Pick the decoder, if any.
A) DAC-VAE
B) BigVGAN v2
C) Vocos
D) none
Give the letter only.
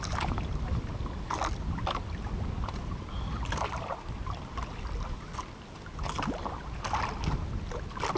D